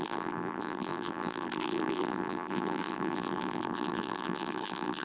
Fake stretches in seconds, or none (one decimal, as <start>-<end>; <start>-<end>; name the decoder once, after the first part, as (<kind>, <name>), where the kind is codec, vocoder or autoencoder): 0.0-5.0 (vocoder, BigVGAN v2)